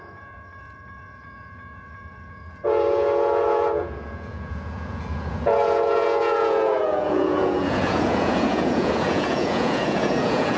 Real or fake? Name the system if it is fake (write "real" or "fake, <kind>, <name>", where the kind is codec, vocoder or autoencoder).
fake, vocoder, Vocos